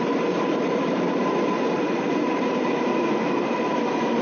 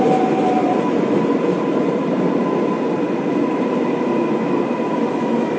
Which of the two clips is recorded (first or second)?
second